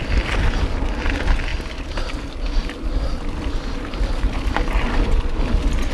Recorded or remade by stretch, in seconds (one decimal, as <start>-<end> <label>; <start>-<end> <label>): 0.0-5.9 recorded